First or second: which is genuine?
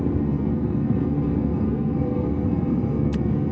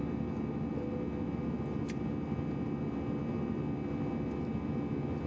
second